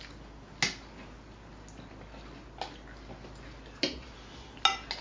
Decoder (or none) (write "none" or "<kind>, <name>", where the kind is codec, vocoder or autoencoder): none